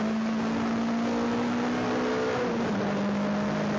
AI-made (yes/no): no